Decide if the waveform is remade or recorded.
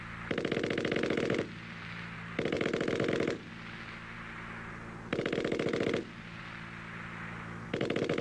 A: recorded